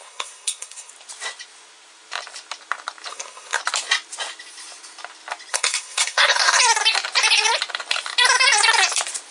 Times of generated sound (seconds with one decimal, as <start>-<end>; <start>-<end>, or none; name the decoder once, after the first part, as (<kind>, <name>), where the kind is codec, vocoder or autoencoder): 0.0-0.9 (codec, SNAC); 3.1-3.6; 5.5-6.6